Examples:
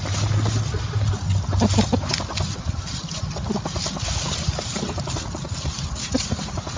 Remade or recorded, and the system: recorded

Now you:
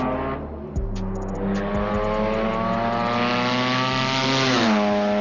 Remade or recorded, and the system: recorded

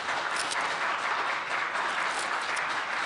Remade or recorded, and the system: recorded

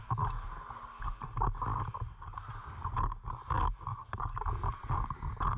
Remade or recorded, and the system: recorded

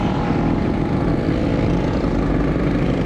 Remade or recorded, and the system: remade, vocoder, BigVGAN v2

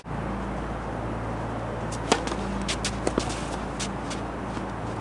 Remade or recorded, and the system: recorded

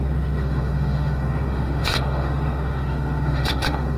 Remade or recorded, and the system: remade, autoencoder, DAC-VAE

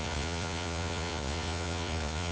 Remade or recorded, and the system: remade, vocoder, Vocos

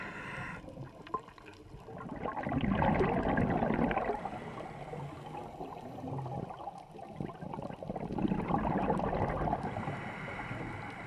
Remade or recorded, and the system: recorded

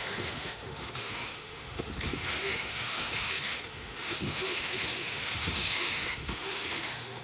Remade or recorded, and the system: remade, autoencoder, DAC-VAE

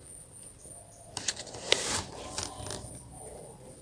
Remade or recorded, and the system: recorded